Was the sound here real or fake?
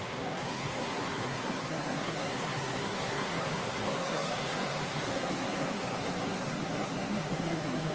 fake